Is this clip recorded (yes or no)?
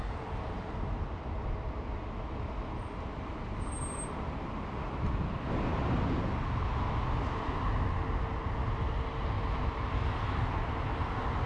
yes